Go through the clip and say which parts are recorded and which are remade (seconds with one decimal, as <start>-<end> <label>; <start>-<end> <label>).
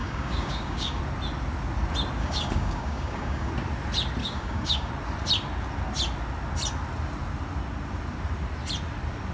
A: 0.0-1.0 remade; 1.0-2.2 recorded; 2.2-3.5 remade; 3.5-4.2 recorded; 4.2-4.9 remade; 4.9-9.3 recorded